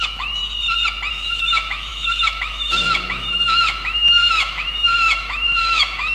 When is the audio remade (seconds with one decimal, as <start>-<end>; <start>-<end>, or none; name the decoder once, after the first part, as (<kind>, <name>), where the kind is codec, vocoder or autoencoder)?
0.0-0.4 (autoencoder, DAC-VAE); 1.1-6.1